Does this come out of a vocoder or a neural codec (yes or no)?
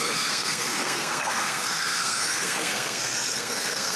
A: yes